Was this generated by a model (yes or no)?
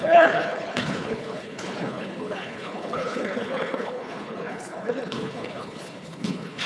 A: yes